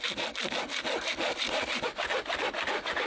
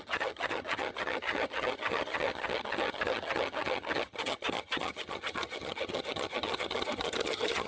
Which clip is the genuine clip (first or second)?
first